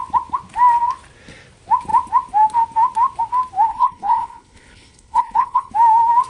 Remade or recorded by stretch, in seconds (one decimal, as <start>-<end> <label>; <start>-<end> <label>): 0.0-3.7 recorded; 3.7-5.7 remade; 5.7-6.3 recorded